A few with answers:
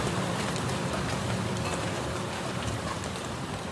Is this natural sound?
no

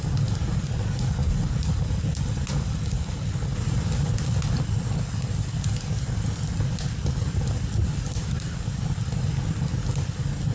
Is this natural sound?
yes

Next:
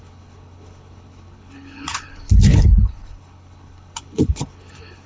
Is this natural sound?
no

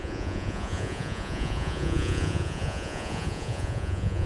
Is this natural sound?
no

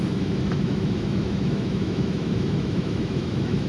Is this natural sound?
no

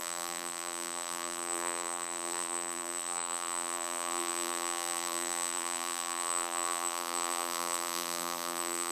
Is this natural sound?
no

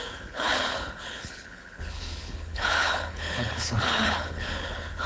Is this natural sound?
no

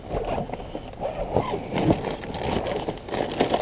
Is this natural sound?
yes